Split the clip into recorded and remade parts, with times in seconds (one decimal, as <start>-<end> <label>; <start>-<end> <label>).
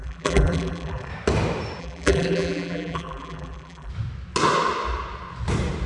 0.0-1.1 remade; 1.1-1.8 recorded; 1.8-3.9 remade; 3.9-5.9 recorded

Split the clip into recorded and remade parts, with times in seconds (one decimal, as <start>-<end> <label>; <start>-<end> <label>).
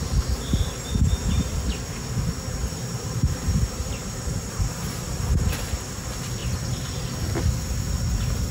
0.0-2.6 recorded; 2.6-5.5 remade; 5.5-8.5 recorded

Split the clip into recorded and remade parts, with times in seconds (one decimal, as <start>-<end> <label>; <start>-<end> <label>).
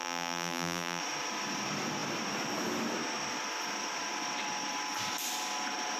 0.0-1.0 remade; 1.0-6.0 recorded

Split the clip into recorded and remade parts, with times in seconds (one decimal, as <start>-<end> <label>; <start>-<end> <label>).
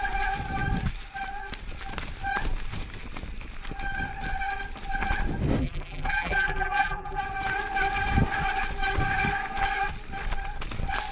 0.0-5.6 recorded; 5.6-7.2 remade; 7.2-11.1 recorded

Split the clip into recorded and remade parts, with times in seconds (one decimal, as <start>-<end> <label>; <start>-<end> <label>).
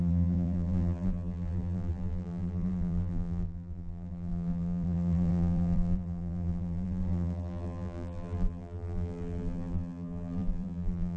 0.0-11.2 remade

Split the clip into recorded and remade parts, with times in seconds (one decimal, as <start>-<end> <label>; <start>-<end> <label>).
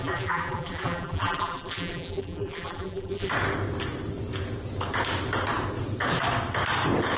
0.0-3.3 remade; 3.3-7.2 recorded